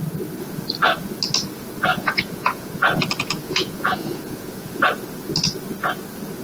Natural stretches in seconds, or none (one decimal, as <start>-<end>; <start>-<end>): 0.0-1.9; 2.7-3.4; 4.8-6.4